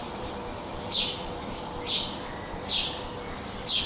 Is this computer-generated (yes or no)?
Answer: no